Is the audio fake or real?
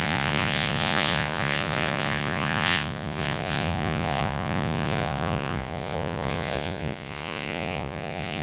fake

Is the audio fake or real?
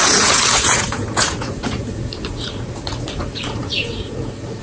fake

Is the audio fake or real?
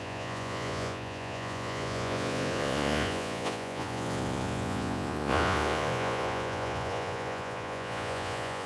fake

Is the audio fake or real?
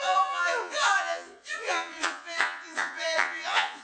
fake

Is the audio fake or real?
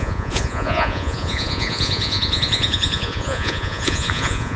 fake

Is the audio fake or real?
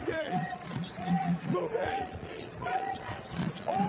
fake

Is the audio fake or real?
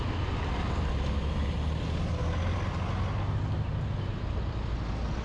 real